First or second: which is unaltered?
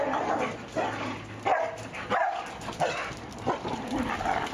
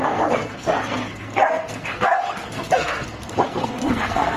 first